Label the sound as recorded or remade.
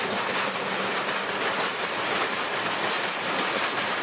remade